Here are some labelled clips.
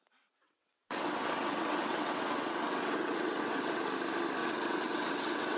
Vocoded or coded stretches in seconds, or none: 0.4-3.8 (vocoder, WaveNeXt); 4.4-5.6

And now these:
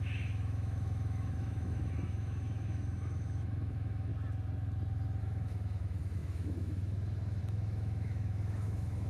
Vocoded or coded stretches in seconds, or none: 0.0-4.1 (autoencoder, DAC-VAE); 5.2-9.1